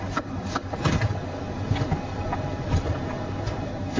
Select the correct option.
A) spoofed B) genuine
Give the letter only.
A